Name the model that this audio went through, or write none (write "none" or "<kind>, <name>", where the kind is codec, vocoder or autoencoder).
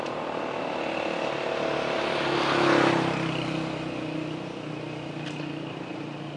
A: none